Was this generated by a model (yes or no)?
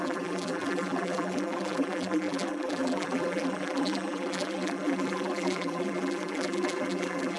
yes